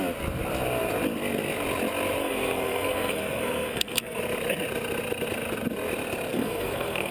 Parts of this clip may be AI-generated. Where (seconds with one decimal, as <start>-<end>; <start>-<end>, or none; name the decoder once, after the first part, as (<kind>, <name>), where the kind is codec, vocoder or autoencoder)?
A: 2.2-4.2 (codec, SNAC); 6.3-7.1